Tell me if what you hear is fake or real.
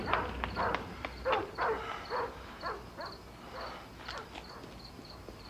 real